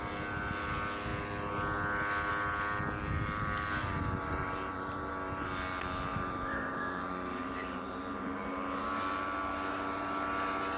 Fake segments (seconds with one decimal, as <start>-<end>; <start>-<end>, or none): 3.8-5.1; 6.1-8.8